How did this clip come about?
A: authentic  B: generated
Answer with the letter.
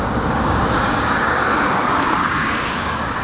B